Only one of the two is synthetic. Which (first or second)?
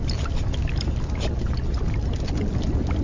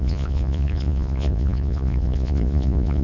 second